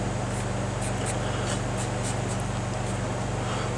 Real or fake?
real